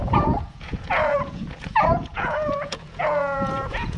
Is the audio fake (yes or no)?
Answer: yes